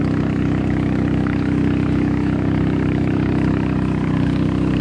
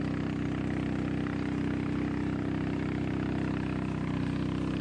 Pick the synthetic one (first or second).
first